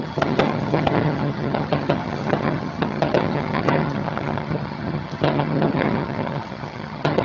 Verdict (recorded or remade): remade